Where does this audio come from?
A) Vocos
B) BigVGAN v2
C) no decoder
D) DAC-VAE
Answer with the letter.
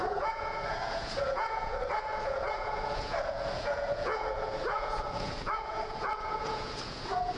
A